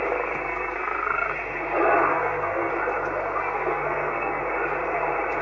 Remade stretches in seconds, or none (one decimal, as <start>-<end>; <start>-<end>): 0.4-1.3; 2.1-2.7; 3.4-4.4